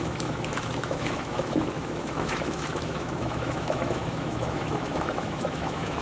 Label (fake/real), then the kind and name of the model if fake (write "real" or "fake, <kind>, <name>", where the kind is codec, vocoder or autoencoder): fake, autoencoder, DAC-VAE